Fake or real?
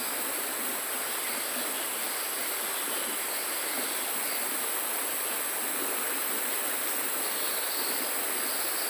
real